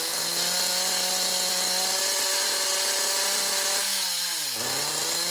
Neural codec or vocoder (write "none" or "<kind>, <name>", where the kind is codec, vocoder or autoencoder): none